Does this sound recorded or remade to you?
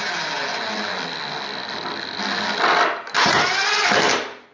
recorded